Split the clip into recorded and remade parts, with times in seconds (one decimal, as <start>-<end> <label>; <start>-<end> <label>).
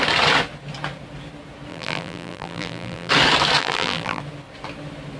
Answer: 0.0-1.7 recorded; 1.7-3.1 remade; 3.1-3.6 recorded; 3.6-4.2 remade; 4.2-5.2 recorded